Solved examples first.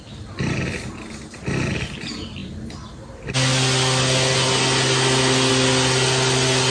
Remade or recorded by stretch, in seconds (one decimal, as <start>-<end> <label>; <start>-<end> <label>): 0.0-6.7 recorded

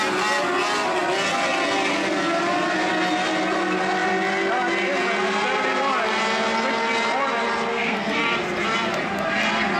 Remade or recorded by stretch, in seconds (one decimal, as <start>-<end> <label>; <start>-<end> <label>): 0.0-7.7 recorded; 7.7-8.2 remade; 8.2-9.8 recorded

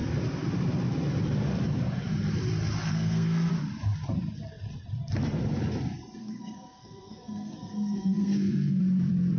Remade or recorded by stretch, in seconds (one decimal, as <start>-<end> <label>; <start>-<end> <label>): 0.0-2.9 recorded; 2.9-3.5 remade; 3.5-6.2 recorded; 6.2-8.8 remade; 8.8-9.4 recorded

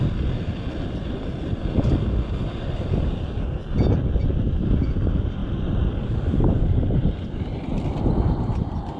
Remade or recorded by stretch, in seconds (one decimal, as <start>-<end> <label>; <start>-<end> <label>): 0.0-1.6 remade; 1.6-4.6 recorded; 4.6-9.0 remade

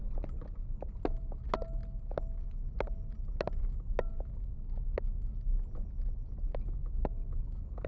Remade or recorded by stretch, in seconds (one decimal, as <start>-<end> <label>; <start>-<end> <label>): 0.0-7.9 recorded

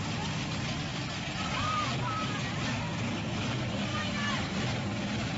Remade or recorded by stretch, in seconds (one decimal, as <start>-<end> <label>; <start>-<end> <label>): 0.0-0.9 recorded; 0.9-2.8 remade; 2.8-3.9 recorded; 3.9-4.7 remade; 4.7-5.4 recorded

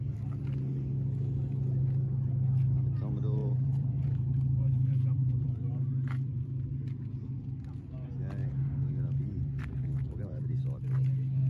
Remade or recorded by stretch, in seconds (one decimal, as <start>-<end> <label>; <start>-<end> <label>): 0.0-3.4 recorded; 3.4-6.8 remade; 6.8-8.4 recorded; 8.4-10.6 remade; 10.6-11.5 recorded

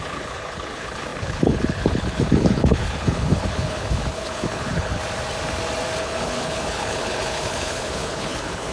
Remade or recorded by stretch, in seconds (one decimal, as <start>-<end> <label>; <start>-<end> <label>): 0.0-5.0 remade; 5.0-6.0 recorded; 6.0-8.7 remade